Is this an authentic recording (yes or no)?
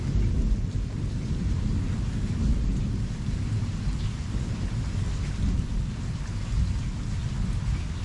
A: yes